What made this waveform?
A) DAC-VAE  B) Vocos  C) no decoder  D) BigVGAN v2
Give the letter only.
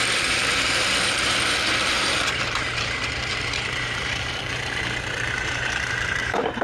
D